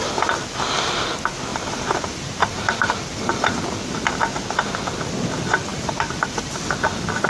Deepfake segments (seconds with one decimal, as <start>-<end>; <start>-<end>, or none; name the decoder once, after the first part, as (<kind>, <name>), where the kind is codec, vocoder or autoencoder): 1.5-4.1 (vocoder, BigVGAN v2); 5.7-6.7